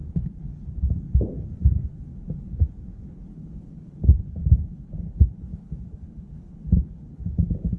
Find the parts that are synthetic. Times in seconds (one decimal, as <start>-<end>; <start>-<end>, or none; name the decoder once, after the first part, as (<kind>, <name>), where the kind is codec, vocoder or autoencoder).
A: 1.4-7.8 (codec, HILCodec)

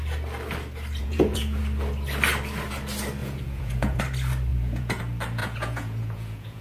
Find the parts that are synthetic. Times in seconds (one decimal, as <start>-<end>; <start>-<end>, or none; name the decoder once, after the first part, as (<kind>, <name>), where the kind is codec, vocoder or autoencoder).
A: 1.0-1.6 (vocoder, Vocos); 3.2-4.0; 4.5-5.0; 5.4-6.6